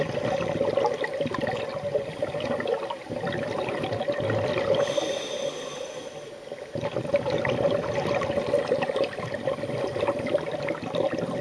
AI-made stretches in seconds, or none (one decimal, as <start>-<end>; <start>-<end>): none

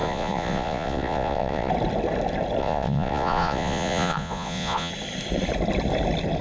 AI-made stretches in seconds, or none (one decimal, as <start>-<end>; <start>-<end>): 0.0-1.7; 2.6-4.9

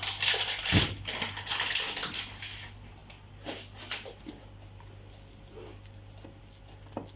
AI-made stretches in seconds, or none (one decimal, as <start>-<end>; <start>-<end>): none

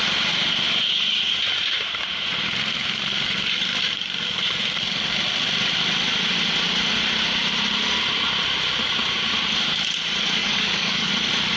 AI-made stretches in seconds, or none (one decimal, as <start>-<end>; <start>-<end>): 10.4-11.1